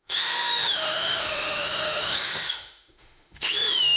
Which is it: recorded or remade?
remade